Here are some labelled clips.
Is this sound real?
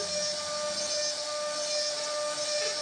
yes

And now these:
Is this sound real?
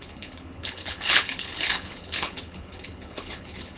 no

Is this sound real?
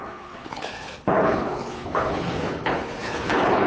no